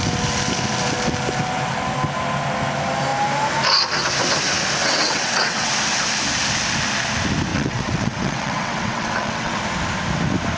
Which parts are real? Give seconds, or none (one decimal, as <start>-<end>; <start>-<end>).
0.0-4.8; 5.7-7.5; 9.6-10.6